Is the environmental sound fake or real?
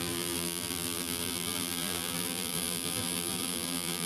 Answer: fake